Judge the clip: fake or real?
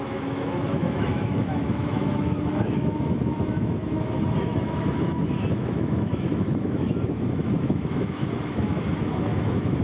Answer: fake